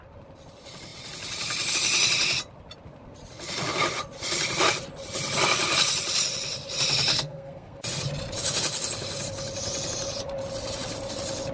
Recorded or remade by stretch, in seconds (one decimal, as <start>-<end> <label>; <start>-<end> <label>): 0.0-7.1 recorded; 7.1-7.8 remade; 7.8-11.5 recorded